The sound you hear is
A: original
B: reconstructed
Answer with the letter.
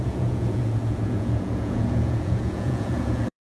B